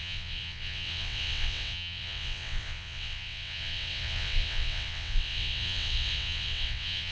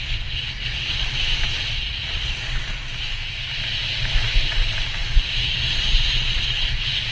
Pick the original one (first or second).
second